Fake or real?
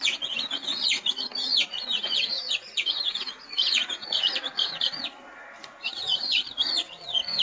fake